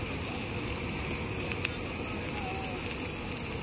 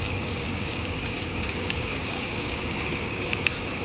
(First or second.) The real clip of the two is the first